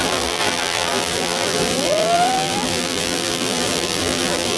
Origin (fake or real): fake